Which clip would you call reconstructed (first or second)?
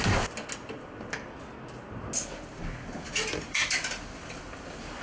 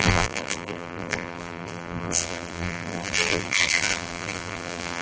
second